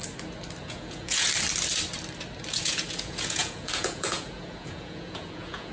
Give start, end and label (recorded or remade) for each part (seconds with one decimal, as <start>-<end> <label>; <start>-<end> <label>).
0.0-0.6 recorded; 0.6-1.3 remade; 1.3-2.5 recorded; 2.5-5.7 remade